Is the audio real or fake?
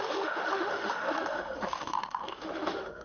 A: fake